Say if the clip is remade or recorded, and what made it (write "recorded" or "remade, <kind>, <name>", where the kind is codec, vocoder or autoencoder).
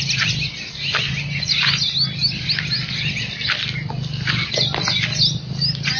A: recorded